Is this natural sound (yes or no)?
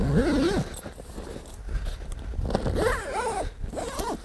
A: yes